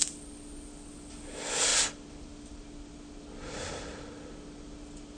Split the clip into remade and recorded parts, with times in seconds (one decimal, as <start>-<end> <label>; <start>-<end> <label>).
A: 0.0-5.2 recorded